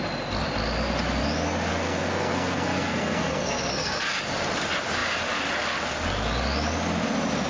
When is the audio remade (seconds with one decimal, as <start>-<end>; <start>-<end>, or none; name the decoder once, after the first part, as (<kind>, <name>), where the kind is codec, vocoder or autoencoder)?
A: 1.7-4.2 (codec, SNAC)